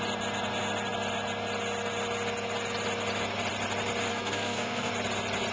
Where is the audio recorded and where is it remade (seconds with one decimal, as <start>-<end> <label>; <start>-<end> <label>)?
0.0-4.1 recorded; 4.1-4.9 remade; 4.9-5.5 recorded